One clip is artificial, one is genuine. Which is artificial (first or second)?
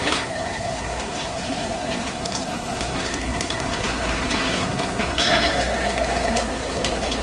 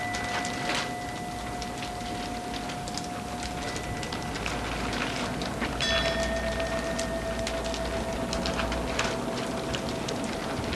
first